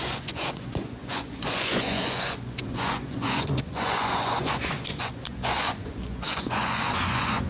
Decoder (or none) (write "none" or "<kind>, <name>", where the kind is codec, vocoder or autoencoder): vocoder, Vocos